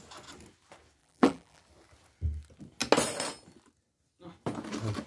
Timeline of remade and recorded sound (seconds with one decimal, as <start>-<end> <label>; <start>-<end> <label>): 0.0-1.0 recorded; 1.0-1.6 remade; 1.6-5.1 recorded